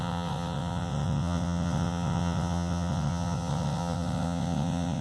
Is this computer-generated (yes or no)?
yes